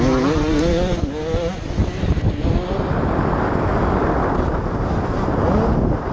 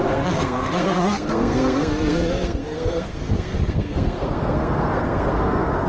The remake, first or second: second